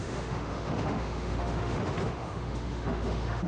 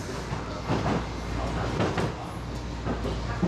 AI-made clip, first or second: first